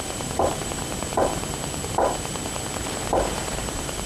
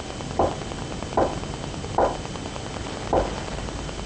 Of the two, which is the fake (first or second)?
first